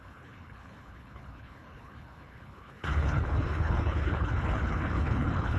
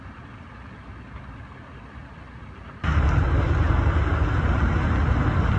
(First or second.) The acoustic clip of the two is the second